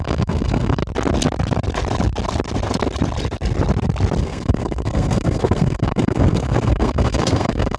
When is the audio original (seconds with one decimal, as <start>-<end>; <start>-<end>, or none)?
0.8-4.2